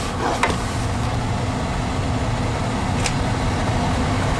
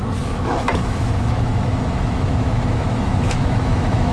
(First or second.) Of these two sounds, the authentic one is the first